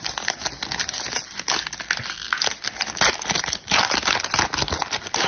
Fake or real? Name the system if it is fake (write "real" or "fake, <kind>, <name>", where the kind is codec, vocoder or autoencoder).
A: real